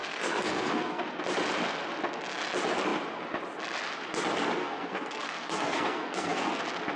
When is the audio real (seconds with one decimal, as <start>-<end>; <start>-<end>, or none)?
1.2-4.6; 6.6-7.0